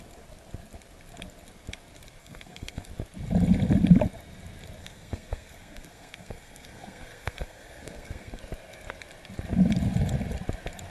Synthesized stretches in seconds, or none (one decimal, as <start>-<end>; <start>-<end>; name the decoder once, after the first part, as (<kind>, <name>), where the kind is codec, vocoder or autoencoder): 2.2-2.9 (codec, SNAC); 4.8-8.4